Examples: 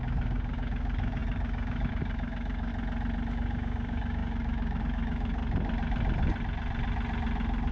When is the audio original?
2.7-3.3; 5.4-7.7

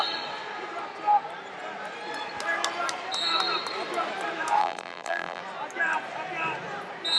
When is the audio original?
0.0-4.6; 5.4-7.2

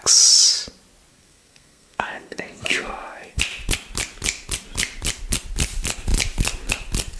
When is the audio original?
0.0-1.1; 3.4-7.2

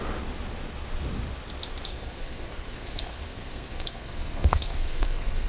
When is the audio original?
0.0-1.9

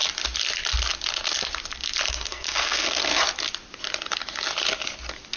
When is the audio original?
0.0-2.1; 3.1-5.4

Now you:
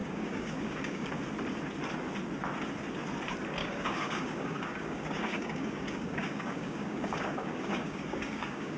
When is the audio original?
1.1-3.6

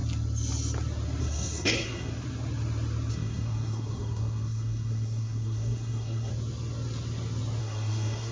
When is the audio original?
0.0-1.2; 2.1-3.1; 6.3-7.6